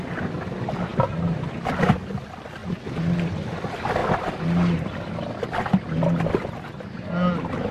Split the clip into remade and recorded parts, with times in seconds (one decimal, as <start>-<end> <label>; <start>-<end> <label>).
0.0-7.7 recorded